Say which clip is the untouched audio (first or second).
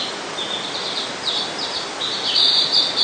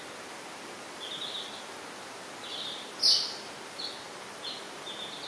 second